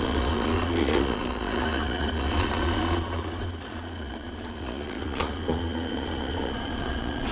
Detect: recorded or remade remade